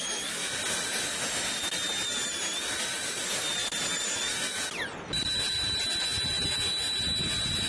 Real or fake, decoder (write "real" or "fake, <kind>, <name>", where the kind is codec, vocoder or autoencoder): real